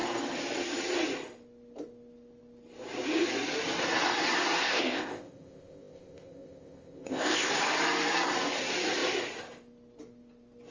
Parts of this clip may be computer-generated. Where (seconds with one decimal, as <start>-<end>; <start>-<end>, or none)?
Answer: 4.6-7.5